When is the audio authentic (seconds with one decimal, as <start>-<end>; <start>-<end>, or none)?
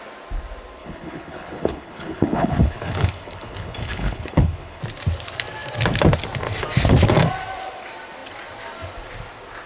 0.0-0.8; 4.8-9.7